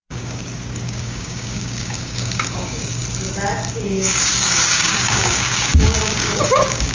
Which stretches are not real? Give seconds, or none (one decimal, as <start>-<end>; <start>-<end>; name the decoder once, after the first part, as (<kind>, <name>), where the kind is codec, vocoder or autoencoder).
0.0-3.0 (codec, DAC); 3.7-6.9